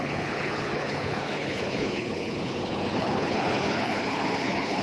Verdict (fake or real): fake